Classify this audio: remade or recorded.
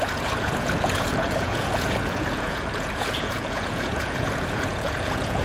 remade